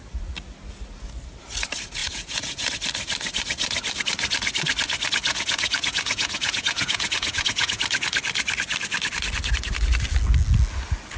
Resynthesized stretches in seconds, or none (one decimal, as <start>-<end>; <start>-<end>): 2.0-2.7; 5.3-7.8